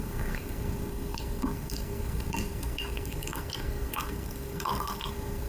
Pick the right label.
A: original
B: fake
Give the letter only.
B